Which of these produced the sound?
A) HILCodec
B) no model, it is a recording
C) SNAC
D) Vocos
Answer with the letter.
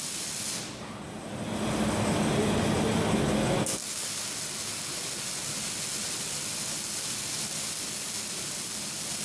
B